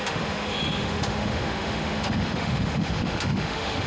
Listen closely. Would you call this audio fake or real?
fake